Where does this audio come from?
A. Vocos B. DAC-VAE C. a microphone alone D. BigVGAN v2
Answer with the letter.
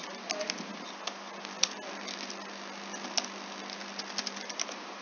C